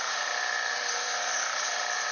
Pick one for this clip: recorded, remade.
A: remade